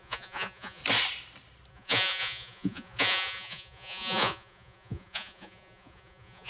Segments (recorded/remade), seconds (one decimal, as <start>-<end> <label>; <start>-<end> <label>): 0.0-0.8 remade; 0.8-1.7 recorded; 1.7-6.5 remade